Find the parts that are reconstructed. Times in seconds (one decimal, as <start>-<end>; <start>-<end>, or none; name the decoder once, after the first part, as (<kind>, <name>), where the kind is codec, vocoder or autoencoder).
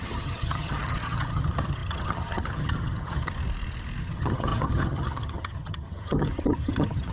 0.0-3.3 (vocoder, HiFi-GAN); 4.0-7.1